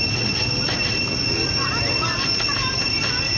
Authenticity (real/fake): real